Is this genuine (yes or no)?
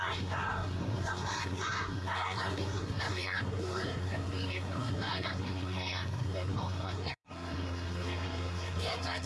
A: no